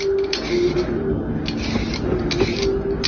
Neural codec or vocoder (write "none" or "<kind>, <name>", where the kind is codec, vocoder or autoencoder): none